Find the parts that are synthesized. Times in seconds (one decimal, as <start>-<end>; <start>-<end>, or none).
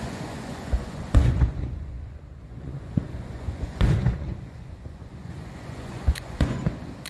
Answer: 0.0-7.1